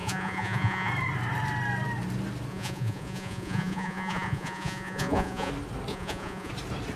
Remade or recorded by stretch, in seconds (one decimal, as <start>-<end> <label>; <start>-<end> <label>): 0.0-0.9 remade; 0.9-2.5 recorded; 2.5-5.5 remade; 5.5-5.9 recorded; 5.9-6.5 remade; 6.5-7.0 recorded

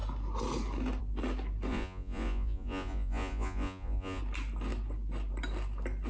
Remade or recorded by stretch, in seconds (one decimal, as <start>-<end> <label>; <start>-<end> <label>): 0.0-1.7 recorded; 1.7-4.2 remade; 4.2-6.1 recorded